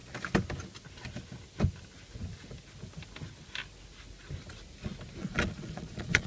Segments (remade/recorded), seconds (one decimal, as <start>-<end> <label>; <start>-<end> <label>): 0.0-5.2 recorded; 5.2-6.3 remade